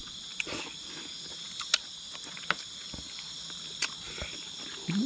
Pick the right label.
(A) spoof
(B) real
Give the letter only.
B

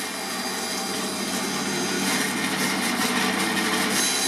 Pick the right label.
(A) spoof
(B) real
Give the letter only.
B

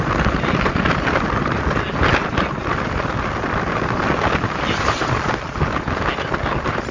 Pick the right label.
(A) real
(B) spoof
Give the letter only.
A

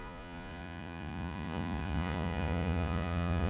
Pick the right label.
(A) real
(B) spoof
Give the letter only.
B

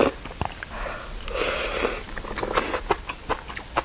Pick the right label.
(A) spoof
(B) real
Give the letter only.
B